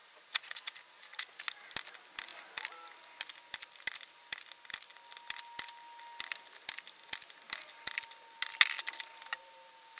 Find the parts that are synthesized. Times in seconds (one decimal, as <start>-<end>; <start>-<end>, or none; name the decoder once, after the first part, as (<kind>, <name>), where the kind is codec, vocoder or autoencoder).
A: 0.0-1.2 (vocoder, Vocos)